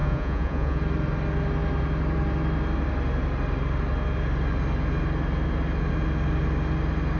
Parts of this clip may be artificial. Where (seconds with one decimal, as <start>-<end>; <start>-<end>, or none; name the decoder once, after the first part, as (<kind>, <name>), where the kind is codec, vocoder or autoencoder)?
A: 0.0-0.8 (vocoder, Vocos)